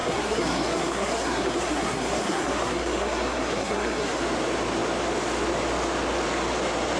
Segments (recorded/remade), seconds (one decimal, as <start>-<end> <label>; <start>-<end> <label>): 0.0-4.2 remade; 4.2-7.0 recorded